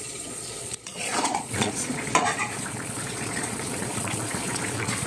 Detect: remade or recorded remade